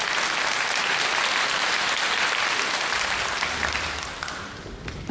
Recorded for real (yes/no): yes